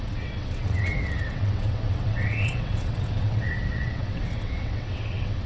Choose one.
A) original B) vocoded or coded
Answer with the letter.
B